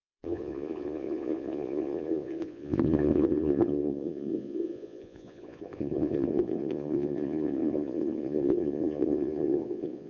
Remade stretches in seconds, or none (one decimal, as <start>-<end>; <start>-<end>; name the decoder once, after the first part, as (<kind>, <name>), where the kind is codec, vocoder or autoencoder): 0.0-10.1 (vocoder, Vocos)

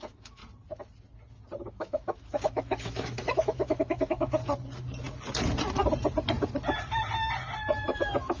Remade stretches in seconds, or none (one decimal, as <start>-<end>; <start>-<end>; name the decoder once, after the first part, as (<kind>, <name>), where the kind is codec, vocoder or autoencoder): 0.0-0.4 (autoencoder, DAC-VAE); 1.7-4.4; 7.8-8.4

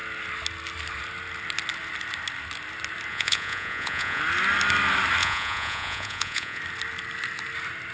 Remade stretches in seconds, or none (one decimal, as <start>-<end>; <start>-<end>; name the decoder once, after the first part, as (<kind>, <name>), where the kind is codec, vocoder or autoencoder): 3.1-4.2 (vocoder, Vocos); 5.2-6.6

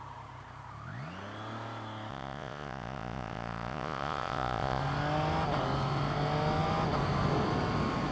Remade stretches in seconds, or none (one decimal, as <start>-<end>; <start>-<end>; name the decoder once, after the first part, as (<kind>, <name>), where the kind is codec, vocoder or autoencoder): 2.1-4.8 (vocoder, Vocos)